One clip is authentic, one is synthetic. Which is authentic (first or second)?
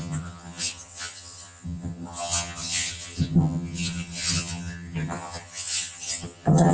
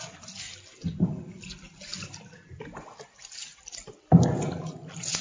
second